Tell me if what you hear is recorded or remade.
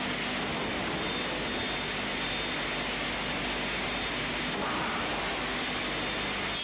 recorded